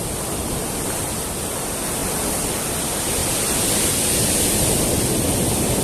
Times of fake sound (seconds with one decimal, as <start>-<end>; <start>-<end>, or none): none